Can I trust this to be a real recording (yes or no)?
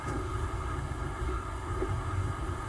no